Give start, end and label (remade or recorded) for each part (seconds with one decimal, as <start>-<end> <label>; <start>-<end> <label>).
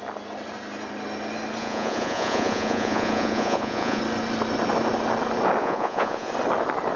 0.0-1.6 recorded; 1.6-4.0 remade; 4.0-5.6 recorded; 5.6-6.3 remade; 6.3-7.0 recorded